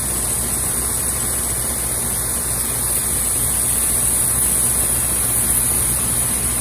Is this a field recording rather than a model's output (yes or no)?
yes